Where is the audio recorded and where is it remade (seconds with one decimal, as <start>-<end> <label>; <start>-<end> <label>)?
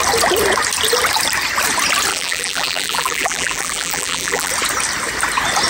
0.0-2.1 recorded; 2.1-4.5 remade; 4.5-5.7 recorded